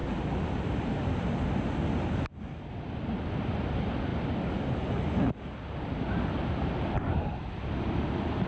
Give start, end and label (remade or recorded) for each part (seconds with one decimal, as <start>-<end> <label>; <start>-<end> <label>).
0.0-8.5 recorded